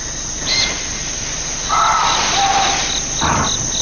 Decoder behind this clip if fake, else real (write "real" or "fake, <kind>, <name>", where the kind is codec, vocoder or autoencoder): real